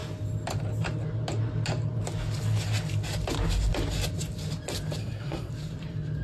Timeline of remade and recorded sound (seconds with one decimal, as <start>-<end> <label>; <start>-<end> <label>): 0.0-5.0 recorded; 5.0-5.5 remade; 5.5-6.2 recorded

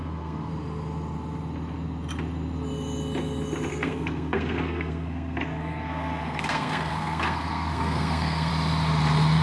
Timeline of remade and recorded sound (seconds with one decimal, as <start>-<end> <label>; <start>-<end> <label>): 0.0-0.5 remade; 0.5-3.7 recorded; 3.7-8.5 remade; 8.5-9.4 recorded

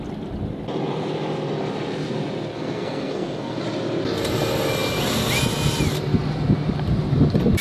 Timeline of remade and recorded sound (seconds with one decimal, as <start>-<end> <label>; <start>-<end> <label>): 0.0-2.5 recorded; 2.5-3.6 remade; 3.6-7.6 recorded

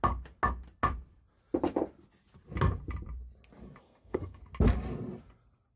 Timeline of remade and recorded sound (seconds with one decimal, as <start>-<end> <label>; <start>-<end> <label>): 0.0-3.8 recorded; 3.8-4.4 remade; 4.4-5.8 recorded

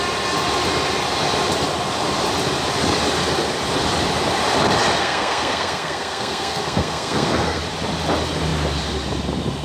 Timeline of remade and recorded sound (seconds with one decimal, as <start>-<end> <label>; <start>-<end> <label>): 0.0-5.0 recorded; 5.0-7.6 remade; 7.6-9.6 recorded

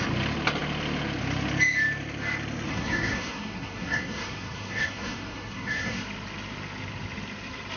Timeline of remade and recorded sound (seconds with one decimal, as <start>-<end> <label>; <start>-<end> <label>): 0.0-2.7 recorded; 2.7-6.0 remade; 6.0-7.8 recorded